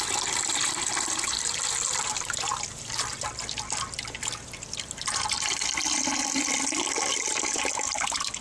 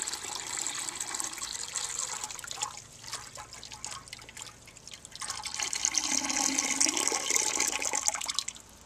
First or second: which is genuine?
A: second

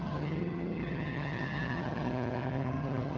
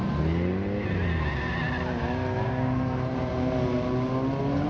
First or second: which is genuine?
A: second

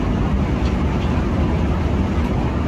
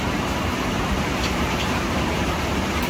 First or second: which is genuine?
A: first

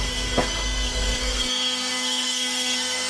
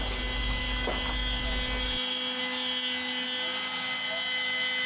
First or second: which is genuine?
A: second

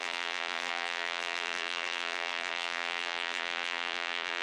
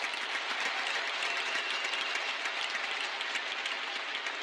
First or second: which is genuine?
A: second